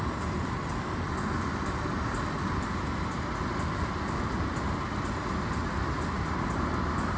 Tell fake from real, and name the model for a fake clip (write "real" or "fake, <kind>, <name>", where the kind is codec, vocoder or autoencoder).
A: real